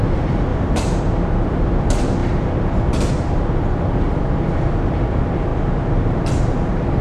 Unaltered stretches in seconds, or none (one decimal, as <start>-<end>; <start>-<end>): 0.0-0.5; 1.0-7.0